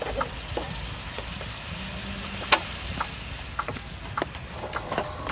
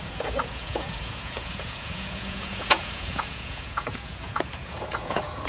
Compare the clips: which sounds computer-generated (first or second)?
second